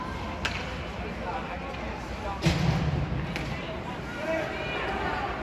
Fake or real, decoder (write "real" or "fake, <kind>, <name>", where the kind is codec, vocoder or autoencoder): real